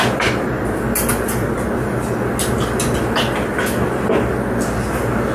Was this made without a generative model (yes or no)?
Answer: yes